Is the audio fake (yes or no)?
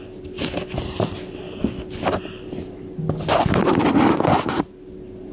no